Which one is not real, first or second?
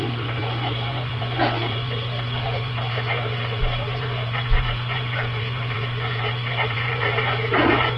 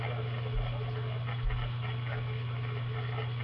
first